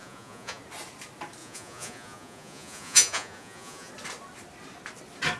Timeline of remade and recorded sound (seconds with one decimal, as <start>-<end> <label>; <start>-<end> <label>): 0.0-0.6 remade; 0.6-1.4 recorded; 1.4-3.9 remade; 3.9-5.4 recorded